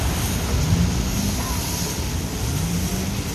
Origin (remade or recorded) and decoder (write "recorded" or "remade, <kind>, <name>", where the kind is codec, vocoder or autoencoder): recorded